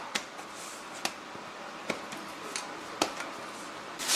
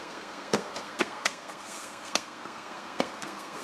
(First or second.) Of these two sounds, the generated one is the second